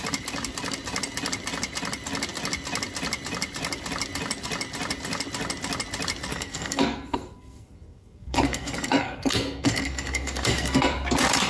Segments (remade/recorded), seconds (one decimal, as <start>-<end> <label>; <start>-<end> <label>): 0.0-6.3 recorded; 6.3-10.9 remade; 10.9-11.5 recorded